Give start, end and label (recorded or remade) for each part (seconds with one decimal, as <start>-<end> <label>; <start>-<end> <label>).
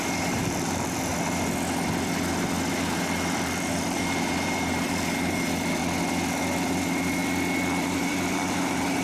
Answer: 0.0-1.1 remade; 1.1-2.7 recorded; 2.7-5.8 remade; 5.8-6.3 recorded; 6.3-7.2 remade; 7.2-7.8 recorded; 7.8-9.0 remade